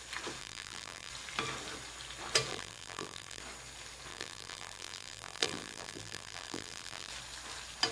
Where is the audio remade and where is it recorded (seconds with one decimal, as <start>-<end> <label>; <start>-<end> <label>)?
0.0-0.4 recorded; 0.4-1.1 remade; 1.1-2.5 recorded; 2.5-3.4 remade; 3.4-4.1 recorded; 4.1-7.1 remade; 7.1-7.9 recorded

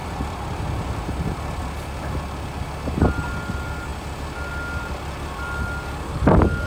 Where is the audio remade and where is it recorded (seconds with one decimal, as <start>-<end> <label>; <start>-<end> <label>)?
0.0-1.0 remade; 1.0-6.7 recorded

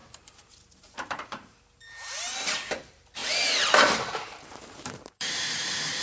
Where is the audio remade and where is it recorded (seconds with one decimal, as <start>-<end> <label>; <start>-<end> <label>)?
0.0-1.6 remade; 1.6-3.2 recorded; 3.2-6.0 remade

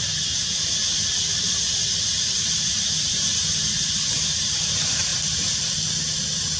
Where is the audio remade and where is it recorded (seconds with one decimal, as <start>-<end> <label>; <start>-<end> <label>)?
0.0-6.6 recorded